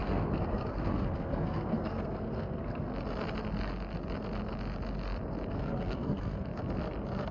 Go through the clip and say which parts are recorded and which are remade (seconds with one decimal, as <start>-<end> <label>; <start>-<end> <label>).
0.0-2.9 remade; 2.9-5.5 recorded; 5.5-6.5 remade; 6.5-7.3 recorded